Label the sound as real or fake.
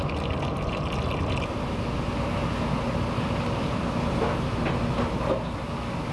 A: real